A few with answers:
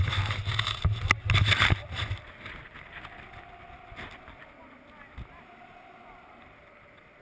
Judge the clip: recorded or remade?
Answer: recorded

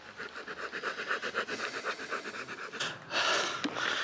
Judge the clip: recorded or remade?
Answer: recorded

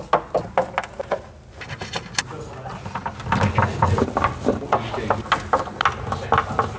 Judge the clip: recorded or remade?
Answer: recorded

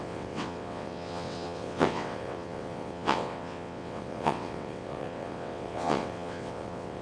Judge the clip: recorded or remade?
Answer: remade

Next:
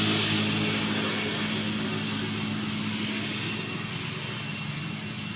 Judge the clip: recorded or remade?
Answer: recorded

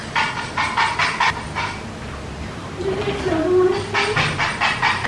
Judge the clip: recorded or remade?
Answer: recorded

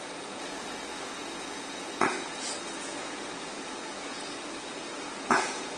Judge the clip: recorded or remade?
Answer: remade